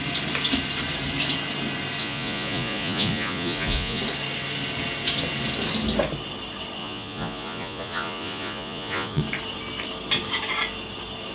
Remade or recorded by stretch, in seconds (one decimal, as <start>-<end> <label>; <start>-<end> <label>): 0.0-2.0 recorded; 2.0-4.0 remade; 4.0-6.8 recorded; 6.8-9.2 remade; 9.2-11.3 recorded